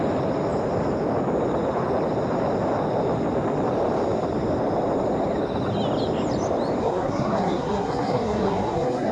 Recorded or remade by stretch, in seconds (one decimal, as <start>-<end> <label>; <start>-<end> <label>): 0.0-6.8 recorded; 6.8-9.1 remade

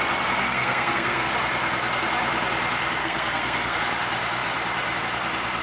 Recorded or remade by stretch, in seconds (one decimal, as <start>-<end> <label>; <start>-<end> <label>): 0.0-0.4 recorded; 0.4-1.3 remade; 1.3-3.0 recorded; 3.0-3.8 remade; 3.8-5.6 recorded

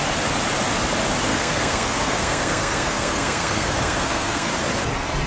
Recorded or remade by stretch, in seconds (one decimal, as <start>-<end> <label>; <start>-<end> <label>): 0.0-1.3 recorded; 1.3-4.5 remade; 4.5-5.3 recorded

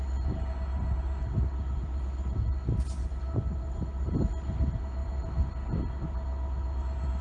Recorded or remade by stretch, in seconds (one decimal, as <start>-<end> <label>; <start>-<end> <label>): 0.0-7.2 recorded